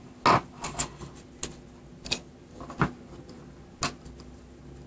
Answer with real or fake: real